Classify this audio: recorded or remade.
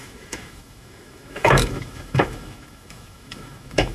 remade